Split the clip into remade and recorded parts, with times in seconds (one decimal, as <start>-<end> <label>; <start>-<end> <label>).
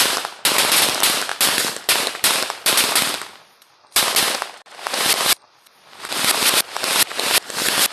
0.0-7.9 recorded